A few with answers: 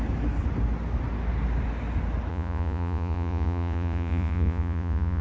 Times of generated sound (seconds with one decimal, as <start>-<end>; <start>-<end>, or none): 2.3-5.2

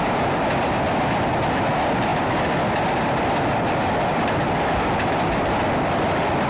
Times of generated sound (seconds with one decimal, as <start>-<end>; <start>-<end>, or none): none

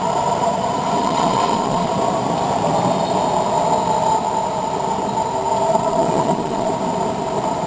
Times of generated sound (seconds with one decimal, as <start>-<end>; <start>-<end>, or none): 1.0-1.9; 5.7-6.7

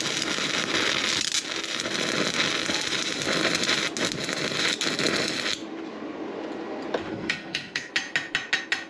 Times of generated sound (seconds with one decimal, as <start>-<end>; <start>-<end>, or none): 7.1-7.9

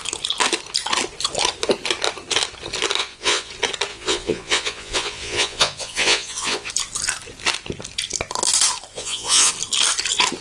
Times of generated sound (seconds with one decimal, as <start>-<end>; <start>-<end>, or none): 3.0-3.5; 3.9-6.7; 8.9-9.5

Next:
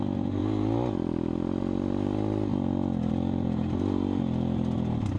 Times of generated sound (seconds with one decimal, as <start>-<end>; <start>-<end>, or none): none